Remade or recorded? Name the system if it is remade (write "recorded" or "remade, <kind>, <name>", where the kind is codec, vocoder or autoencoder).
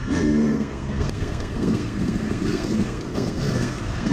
remade, codec, SNAC